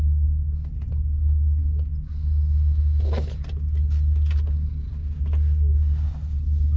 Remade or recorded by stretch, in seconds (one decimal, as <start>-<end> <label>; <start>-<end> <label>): 0.0-6.8 recorded